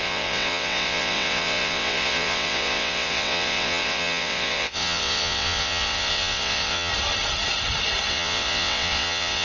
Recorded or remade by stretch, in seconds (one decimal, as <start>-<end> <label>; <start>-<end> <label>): 0.0-6.9 remade; 6.9-8.1 recorded; 8.1-9.4 remade